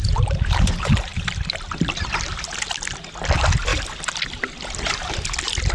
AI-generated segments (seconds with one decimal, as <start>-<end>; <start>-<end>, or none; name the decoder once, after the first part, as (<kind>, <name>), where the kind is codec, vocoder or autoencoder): 0.0-0.6 (vocoder, BigVGAN v2); 1.1-1.9